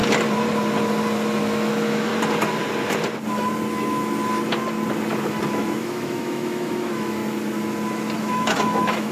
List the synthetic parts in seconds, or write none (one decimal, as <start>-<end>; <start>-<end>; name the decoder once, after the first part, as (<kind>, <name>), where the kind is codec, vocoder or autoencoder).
1.4-2.1 (autoencoder, DAC-VAE); 5.5-7.2; 8.2-9.1